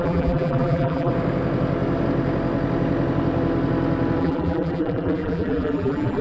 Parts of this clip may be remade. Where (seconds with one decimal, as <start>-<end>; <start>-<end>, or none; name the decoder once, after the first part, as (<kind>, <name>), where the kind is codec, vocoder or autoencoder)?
0.0-1.1 (vocoder, BigVGAN v2); 4.2-6.2